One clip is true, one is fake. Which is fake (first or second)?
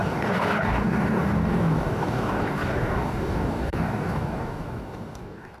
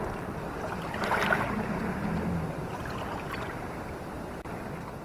first